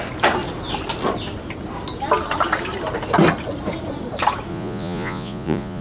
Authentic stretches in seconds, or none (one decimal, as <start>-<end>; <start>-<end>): 0.0-4.5